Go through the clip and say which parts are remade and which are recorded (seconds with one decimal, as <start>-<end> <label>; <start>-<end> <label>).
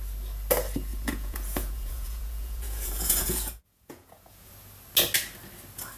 0.0-0.9 recorded; 0.9-4.5 remade; 4.5-6.0 recorded